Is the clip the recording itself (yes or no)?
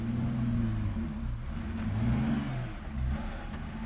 yes